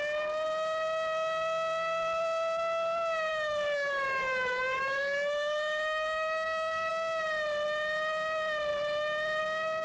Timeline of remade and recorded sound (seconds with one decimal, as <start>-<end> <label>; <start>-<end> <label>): 0.0-3.3 recorded; 3.3-6.9 remade; 6.9-9.8 recorded